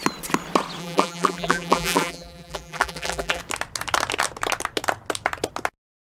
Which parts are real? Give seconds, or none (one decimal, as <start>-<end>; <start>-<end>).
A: 0.0-0.8; 3.4-6.0